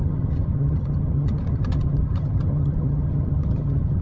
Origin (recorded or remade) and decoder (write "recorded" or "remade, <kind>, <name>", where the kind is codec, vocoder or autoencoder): remade, vocoder, HiFi-GAN